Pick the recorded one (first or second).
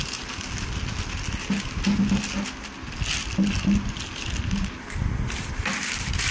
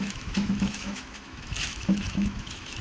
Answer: first